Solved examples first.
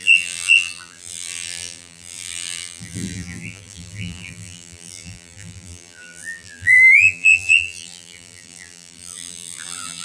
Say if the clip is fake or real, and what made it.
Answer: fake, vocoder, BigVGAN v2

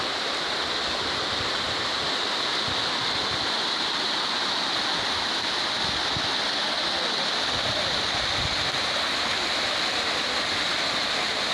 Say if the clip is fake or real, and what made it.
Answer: real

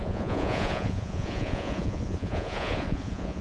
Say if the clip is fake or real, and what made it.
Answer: fake, vocoder, Vocos